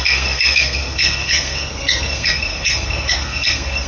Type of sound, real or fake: fake